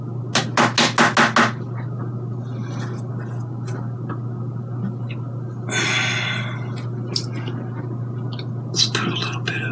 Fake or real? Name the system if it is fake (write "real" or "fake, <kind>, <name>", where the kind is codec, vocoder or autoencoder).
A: real